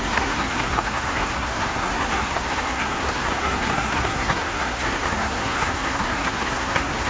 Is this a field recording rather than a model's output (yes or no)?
no